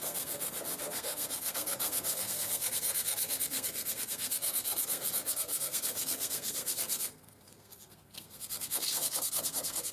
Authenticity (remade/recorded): remade